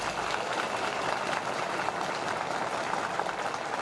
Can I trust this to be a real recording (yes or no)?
yes